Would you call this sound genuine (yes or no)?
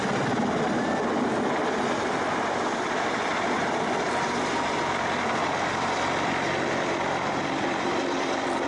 yes